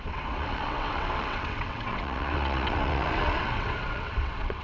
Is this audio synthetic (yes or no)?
yes